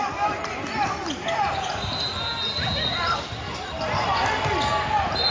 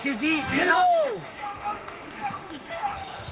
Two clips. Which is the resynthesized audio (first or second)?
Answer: second